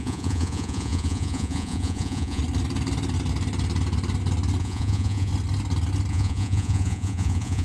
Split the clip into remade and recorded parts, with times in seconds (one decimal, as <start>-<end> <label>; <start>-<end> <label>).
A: 0.0-2.4 remade; 2.4-4.6 recorded; 4.6-5.3 remade; 5.3-6.1 recorded; 6.1-7.6 remade